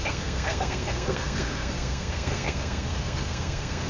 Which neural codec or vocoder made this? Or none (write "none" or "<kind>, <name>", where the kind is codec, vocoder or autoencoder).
codec, SNAC